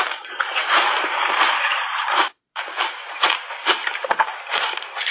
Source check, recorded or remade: remade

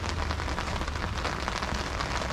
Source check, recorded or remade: recorded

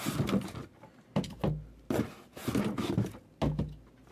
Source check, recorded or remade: recorded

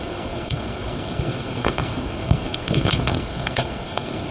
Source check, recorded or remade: remade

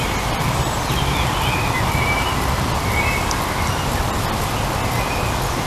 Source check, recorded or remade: recorded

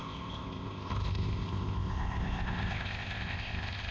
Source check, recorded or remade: remade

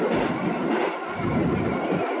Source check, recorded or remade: recorded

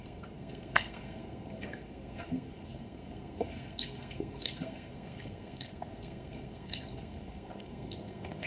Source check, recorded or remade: remade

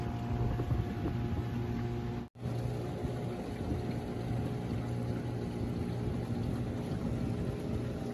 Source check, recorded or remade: recorded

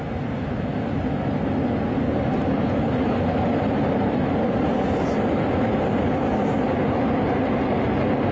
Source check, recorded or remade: recorded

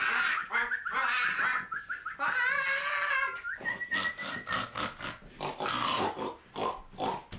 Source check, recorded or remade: recorded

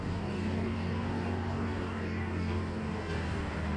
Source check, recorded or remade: remade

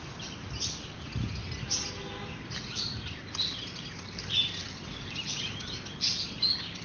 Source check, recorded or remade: recorded